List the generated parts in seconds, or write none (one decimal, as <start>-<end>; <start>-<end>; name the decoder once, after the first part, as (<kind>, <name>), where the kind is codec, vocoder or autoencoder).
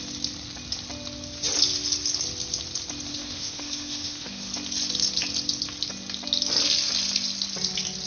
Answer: 3.1-4.5 (autoencoder, DAC-VAE)